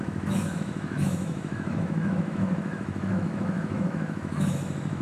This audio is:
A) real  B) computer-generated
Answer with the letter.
B